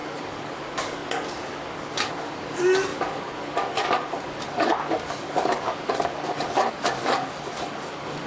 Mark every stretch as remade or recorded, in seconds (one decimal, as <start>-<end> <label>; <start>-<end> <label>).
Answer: 0.0-8.3 remade